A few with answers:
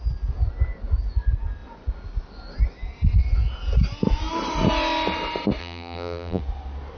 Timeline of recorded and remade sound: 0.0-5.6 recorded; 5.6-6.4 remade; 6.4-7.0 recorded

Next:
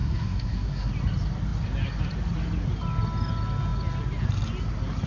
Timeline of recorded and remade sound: 0.0-0.9 remade; 0.9-5.1 recorded

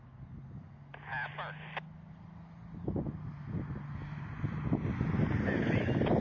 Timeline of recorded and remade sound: 0.0-6.2 recorded